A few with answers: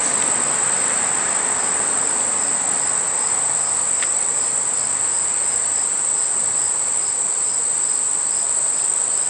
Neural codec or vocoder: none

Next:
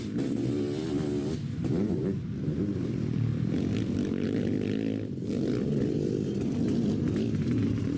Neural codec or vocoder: none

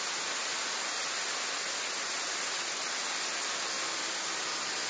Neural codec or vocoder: none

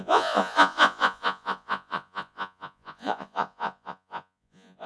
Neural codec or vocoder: vocoder, Vocos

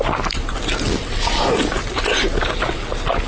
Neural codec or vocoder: none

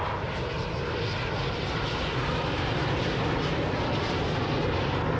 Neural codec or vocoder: none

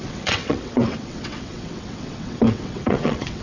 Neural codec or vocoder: vocoder, WaveNeXt